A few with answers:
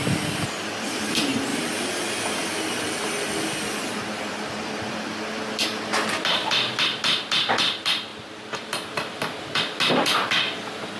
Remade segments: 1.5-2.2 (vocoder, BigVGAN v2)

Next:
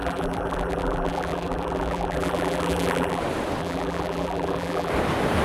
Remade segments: 0.0-3.2 (vocoder, BigVGAN v2); 3.6-4.9

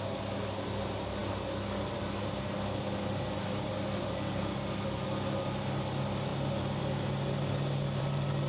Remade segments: 0.0-8.5 (vocoder, BigVGAN v2)

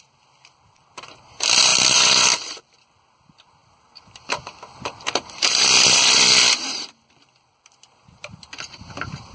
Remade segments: 1.7-2.6 (vocoder, BigVGAN v2); 3.6-7.1

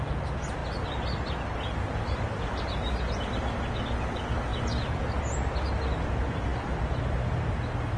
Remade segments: 0.6-2.2 (vocoder, BigVGAN v2); 4.5-5.2

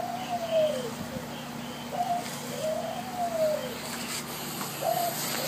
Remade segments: 0.0-5.5 (vocoder, BigVGAN v2)

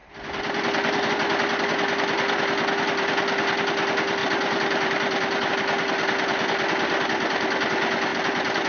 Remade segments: 0.0-1.1 (vocoder, BigVGAN v2); 4.2-5.5; 8.1-8.7

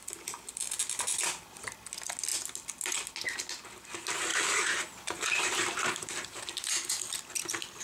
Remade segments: 4.3-6.9 (vocoder, BigVGAN v2)